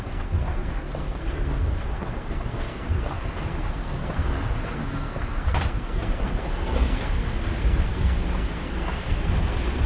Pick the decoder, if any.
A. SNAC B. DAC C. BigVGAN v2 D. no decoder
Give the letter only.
A